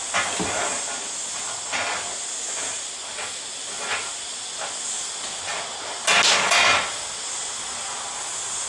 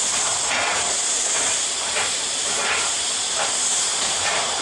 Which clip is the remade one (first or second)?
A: second